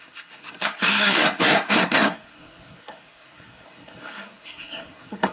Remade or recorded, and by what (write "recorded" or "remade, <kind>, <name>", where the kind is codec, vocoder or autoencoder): remade, codec, SNAC